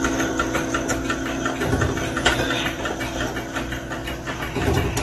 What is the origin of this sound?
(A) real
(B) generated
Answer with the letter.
A